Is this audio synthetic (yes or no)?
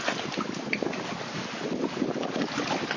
no